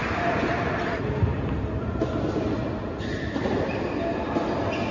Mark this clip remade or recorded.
recorded